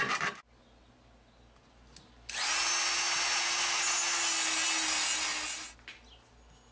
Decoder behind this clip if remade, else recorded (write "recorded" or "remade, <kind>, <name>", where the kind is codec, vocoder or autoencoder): recorded